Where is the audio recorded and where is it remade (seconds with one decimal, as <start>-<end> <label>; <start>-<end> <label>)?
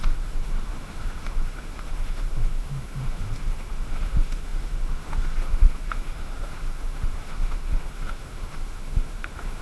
0.0-9.6 remade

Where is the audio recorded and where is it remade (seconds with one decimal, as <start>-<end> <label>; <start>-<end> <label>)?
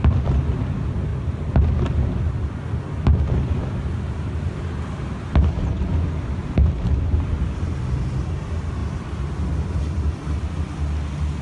0.0-11.4 recorded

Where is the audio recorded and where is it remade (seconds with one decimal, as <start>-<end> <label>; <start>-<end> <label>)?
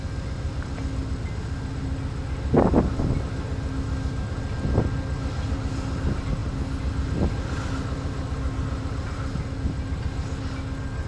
0.0-11.1 recorded